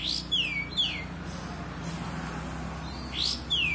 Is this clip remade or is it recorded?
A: recorded